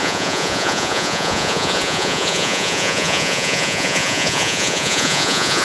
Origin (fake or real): fake